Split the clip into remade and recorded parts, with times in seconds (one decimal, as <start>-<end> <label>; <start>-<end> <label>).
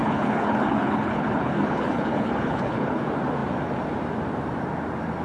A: 0.0-3.0 remade; 3.0-5.2 recorded